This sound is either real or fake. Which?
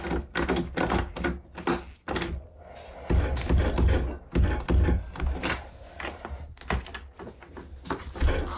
real